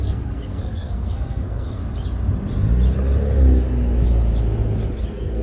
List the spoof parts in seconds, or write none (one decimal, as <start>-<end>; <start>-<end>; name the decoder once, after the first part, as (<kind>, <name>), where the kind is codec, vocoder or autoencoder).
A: 0.0-1.8 (codec, SNAC); 5.0-5.4